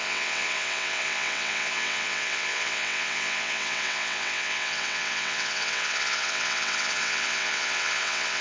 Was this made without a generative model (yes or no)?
no